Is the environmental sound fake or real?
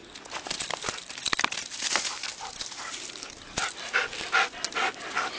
real